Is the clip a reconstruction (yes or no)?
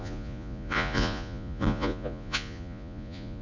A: yes